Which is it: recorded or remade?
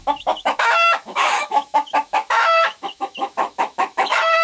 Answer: remade